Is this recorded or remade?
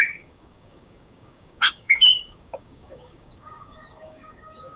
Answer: remade